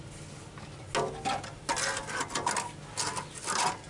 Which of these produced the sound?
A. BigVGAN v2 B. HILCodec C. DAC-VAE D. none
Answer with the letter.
D